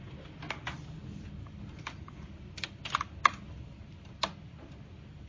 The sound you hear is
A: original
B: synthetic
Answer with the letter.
A